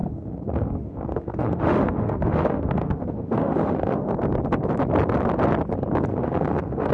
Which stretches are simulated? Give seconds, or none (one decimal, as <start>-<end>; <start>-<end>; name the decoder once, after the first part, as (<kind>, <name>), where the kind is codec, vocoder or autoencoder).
0.0-4.1 (autoencoder, DAC-VAE); 6.1-6.9